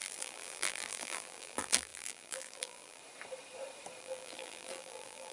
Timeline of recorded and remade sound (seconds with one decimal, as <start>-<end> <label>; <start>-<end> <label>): 0.0-3.0 remade; 3.0-4.0 recorded; 4.0-5.3 remade